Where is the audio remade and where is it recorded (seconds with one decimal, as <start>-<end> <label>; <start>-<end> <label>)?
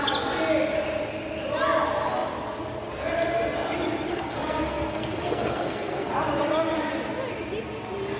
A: 0.0-4.1 recorded; 4.1-6.1 remade; 6.1-8.2 recorded